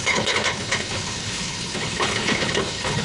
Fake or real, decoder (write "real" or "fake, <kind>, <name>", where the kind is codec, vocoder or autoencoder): fake, codec, HILCodec